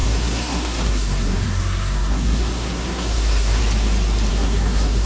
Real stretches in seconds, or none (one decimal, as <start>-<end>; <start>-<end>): 3.6-4.3